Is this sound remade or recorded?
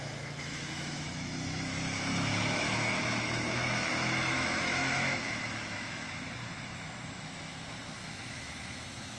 remade